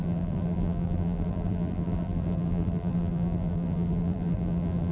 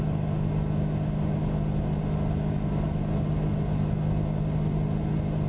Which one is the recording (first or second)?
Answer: second